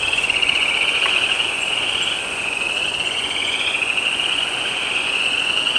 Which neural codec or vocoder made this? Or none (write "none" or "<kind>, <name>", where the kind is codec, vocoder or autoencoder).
vocoder, Vocos